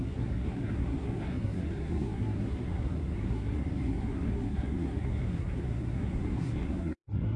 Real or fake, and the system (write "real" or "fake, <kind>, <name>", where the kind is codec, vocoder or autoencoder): fake, codec, SNAC